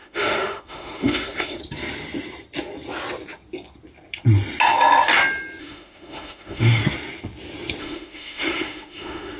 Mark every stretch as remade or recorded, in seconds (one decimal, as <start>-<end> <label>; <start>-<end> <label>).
0.0-1.6 remade; 1.6-5.6 recorded; 5.6-6.8 remade; 6.8-7.8 recorded; 7.8-9.4 remade